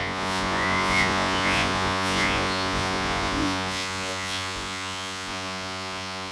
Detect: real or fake fake